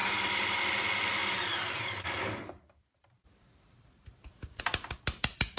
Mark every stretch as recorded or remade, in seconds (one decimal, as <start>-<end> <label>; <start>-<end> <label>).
0.0-0.6 remade; 0.6-1.2 recorded; 1.2-4.6 remade; 4.6-5.6 recorded